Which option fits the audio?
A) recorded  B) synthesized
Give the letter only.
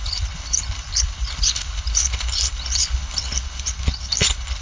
B